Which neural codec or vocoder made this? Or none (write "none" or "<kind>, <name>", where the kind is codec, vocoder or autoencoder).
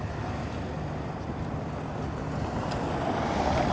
none